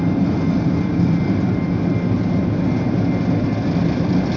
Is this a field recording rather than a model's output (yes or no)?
yes